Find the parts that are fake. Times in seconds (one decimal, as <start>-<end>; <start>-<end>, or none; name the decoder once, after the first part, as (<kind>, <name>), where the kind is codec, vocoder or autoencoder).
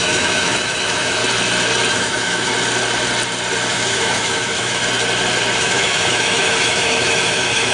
0.0-1.2 (autoencoder, DAC-VAE); 1.9-2.5; 3.7-4.8; 5.6-7.7